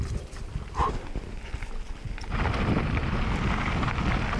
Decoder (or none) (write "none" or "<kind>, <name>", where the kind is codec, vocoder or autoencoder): none